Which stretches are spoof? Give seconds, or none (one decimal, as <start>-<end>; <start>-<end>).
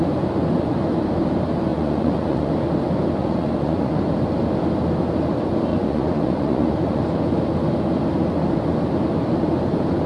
1.7-2.5; 3.2-4.0; 5.7-7.0